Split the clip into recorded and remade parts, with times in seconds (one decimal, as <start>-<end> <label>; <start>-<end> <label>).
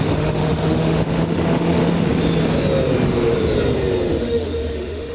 0.0-1.8 remade; 1.8-4.2 recorded; 4.2-5.1 remade